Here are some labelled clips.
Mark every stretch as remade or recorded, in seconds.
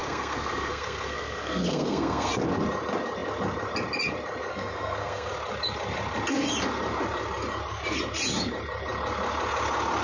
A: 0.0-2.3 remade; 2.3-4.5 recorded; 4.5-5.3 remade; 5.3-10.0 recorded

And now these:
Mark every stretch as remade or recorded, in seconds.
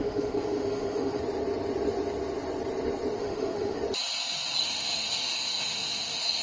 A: 0.0-1.2 remade; 1.2-3.2 recorded; 3.2-3.8 remade; 3.8-4.6 recorded; 4.6-6.4 remade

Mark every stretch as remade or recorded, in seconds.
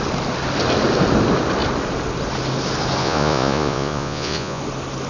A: 0.0-3.0 recorded; 3.0-4.6 remade; 4.6-5.1 recorded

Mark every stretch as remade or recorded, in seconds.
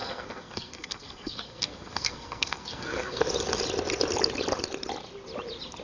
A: 0.0-3.2 remade; 3.2-5.8 recorded